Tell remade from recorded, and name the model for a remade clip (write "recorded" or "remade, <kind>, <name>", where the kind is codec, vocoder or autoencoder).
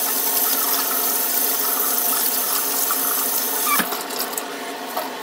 recorded